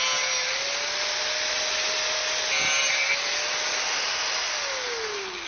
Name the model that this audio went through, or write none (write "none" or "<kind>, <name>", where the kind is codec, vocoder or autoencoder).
none